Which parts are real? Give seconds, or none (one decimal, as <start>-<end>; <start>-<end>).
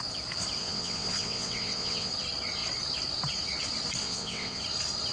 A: 0.0-0.6; 2.1-4.0; 4.6-5.1